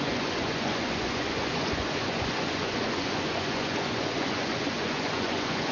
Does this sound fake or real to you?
fake